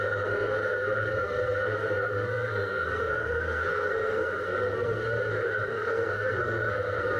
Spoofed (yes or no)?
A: yes